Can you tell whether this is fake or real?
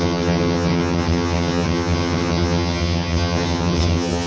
fake